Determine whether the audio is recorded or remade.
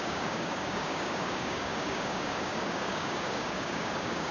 remade